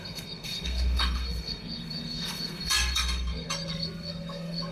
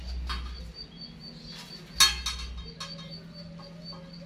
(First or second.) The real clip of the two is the second